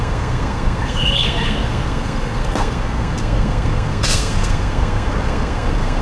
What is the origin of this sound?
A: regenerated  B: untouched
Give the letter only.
A